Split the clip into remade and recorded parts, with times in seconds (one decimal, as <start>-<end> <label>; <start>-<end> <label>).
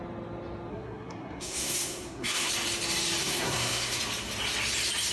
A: 0.0-0.7 recorded; 0.7-2.5 remade; 2.5-3.2 recorded; 3.2-4.0 remade; 4.0-5.1 recorded